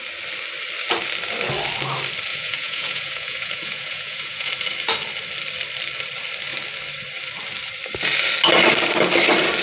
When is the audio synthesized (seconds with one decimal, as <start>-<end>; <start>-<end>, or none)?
2.3-4.5